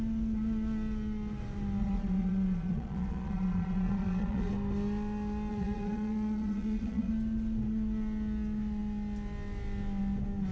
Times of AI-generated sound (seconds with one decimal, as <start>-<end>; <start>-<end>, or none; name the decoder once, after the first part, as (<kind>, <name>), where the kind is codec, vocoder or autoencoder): 1.8-4.5 (vocoder, Vocos); 5.5-7.1